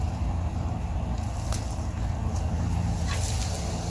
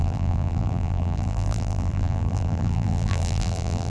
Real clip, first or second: first